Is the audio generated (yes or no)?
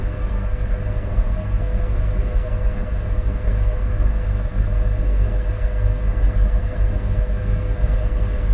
yes